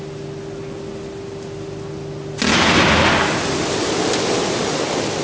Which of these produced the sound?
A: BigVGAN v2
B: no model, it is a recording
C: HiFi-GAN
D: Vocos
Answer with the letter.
B